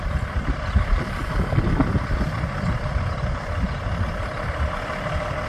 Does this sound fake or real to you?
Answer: fake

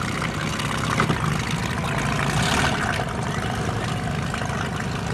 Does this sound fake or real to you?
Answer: real